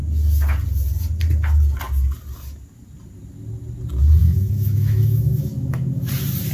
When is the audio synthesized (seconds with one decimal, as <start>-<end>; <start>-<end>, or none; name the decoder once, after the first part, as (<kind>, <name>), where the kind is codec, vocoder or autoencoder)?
4.2-6.1 (autoencoder, DAC-VAE)